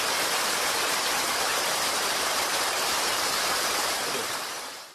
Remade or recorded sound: remade